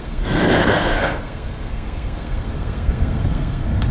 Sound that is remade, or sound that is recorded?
remade